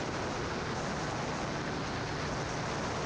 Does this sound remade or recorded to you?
recorded